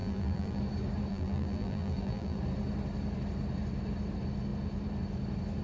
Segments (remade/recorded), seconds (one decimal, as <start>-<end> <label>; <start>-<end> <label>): 0.0-0.6 remade; 0.6-1.1 recorded; 1.1-2.4 remade; 2.4-5.6 recorded